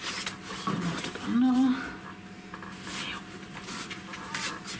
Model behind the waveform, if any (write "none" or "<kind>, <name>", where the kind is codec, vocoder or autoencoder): none